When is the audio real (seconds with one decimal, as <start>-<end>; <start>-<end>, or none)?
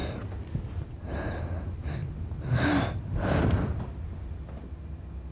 0.0-5.3